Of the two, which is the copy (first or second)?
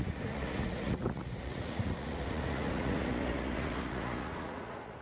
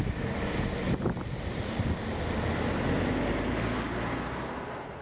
first